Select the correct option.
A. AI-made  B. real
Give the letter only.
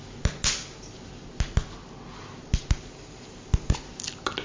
B